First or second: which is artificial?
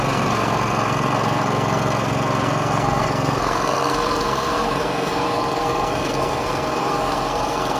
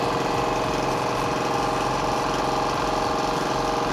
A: first